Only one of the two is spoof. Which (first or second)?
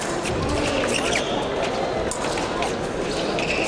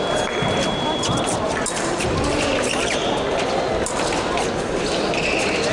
second